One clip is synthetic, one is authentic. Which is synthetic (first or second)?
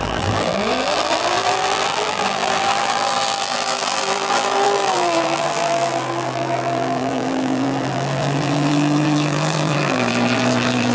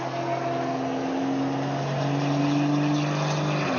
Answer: first